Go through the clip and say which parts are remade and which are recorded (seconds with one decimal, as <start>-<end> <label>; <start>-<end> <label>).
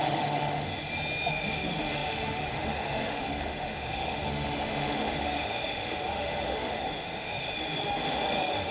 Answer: 0.0-0.7 remade; 0.7-1.3 recorded; 1.3-8.7 remade